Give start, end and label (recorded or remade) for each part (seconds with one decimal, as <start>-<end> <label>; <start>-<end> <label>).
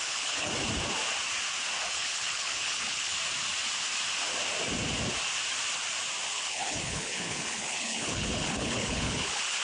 0.0-0.5 remade; 0.5-1.9 recorded; 1.9-3.2 remade; 3.2-6.3 recorded; 6.3-9.6 remade